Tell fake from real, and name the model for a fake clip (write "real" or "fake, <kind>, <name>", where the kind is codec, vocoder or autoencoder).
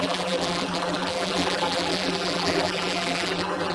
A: fake, vocoder, BigVGAN v2